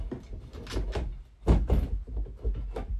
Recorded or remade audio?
recorded